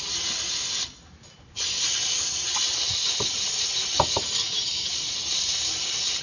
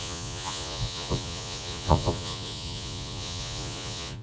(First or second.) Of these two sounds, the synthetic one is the second